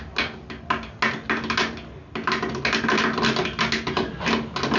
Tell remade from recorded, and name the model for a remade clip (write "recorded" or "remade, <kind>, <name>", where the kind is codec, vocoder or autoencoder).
recorded